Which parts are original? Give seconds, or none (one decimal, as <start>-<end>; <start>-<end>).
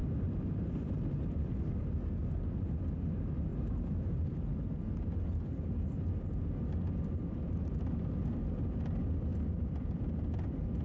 1.6-3.5; 7.9-9.3; 10.0-10.8